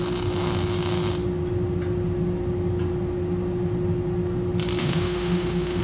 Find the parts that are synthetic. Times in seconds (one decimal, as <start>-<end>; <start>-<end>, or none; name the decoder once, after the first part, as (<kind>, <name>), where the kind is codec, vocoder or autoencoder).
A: 4.8-5.8 (autoencoder, DAC-VAE)

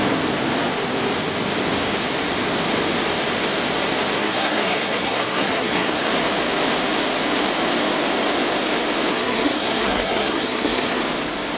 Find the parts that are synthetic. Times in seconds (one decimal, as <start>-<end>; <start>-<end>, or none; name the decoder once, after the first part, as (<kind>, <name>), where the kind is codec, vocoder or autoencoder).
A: 4.2-6.1 (codec, SNAC); 9.1-11.0

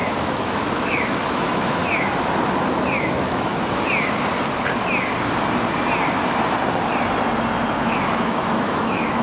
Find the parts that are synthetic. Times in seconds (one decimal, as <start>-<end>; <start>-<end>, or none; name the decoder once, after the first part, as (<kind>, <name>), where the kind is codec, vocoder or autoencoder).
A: 0.0-1.8 (autoencoder, DAC-VAE); 3.0-3.5; 7.7-9.2

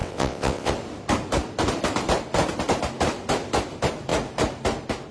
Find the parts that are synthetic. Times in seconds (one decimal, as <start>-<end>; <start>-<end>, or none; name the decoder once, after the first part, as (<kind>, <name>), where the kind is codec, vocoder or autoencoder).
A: 0.0-0.7 (vocoder, WaveNeXt)